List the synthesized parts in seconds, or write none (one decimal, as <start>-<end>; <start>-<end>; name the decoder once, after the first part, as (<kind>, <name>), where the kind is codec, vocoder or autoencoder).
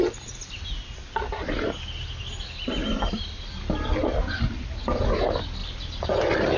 2.9-3.7 (vocoder, BigVGAN v2); 5.6-6.6